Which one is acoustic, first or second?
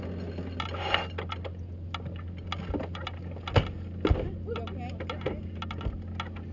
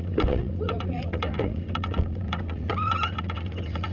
first